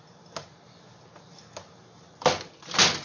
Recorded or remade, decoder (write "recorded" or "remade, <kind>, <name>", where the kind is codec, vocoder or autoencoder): recorded